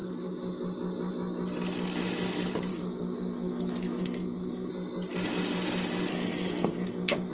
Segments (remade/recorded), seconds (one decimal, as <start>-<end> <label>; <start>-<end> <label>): 0.0-2.7 recorded; 2.7-4.7 remade; 4.7-6.1 recorded; 6.1-7.3 remade